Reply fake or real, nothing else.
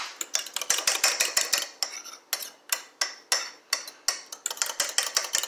real